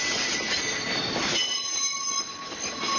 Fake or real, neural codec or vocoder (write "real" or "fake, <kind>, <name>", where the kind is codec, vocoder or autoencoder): real